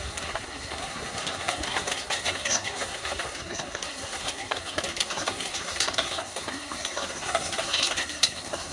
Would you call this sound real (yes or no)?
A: no